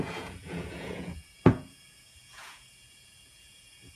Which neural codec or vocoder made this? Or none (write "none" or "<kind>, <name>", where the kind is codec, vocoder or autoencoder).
vocoder, Vocos